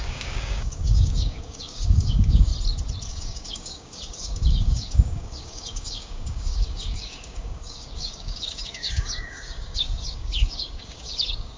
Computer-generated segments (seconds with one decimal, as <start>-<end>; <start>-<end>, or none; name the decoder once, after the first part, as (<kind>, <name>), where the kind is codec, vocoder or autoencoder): 0.0-2.5 (codec, DAC); 3.1-11.6